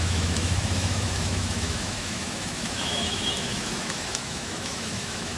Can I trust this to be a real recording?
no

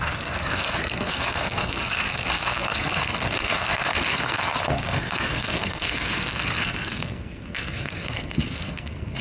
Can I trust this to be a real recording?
no